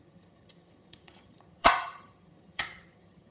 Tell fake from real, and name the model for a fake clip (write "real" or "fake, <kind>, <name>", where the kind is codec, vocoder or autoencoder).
fake, vocoder, HiFi-GAN